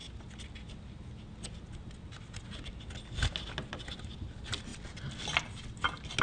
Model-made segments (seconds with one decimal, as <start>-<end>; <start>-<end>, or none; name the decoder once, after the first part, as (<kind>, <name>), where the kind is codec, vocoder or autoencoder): none